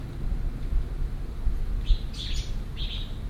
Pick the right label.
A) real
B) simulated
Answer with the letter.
A